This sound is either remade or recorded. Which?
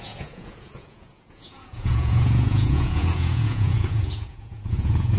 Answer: remade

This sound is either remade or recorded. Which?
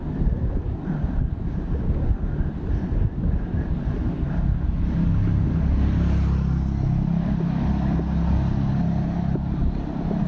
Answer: recorded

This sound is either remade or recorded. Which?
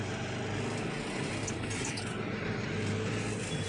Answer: recorded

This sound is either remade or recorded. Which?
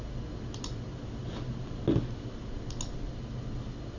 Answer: recorded